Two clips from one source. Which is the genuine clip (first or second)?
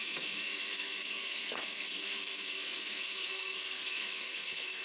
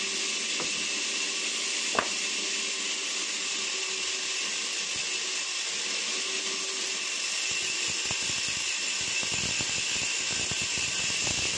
second